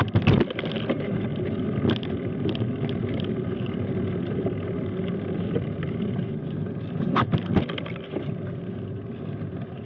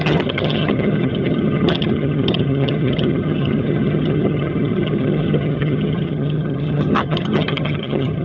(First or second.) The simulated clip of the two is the second